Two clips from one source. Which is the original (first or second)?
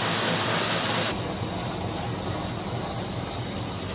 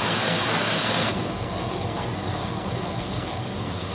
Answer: first